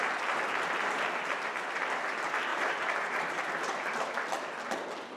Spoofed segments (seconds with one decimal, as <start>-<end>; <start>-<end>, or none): 2.5-4.2